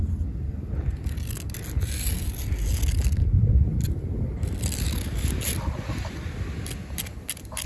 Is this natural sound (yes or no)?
yes